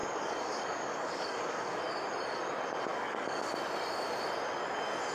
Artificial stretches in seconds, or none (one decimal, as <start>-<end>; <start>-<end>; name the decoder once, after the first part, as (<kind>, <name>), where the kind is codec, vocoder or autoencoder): 0.0-1.8 (codec, DAC); 2.9-3.5